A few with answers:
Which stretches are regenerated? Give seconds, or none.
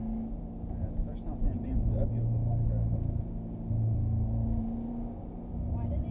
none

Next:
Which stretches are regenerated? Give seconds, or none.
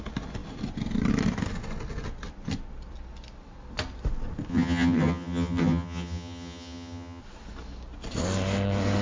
4.5-7.2 (vocoder, HiFi-GAN)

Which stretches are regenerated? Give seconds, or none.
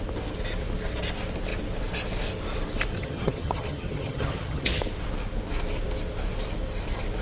2.9-4.8 (vocoder, HiFi-GAN)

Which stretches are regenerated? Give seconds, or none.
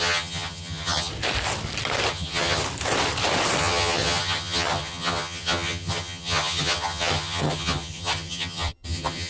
0.0-1.1 (vocoder, HiFi-GAN); 2.1-2.6; 3.6-9.3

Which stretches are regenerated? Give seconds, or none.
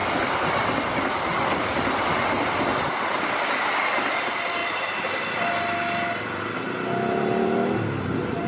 none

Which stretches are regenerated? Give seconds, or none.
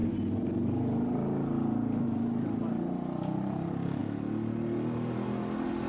none